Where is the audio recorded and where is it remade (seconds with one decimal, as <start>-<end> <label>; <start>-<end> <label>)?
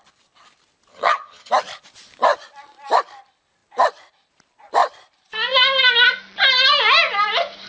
0.0-0.9 recorded; 0.9-1.5 remade; 1.5-7.7 recorded